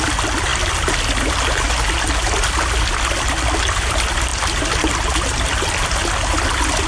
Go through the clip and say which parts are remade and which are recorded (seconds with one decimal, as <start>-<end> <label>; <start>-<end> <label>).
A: 0.0-6.9 recorded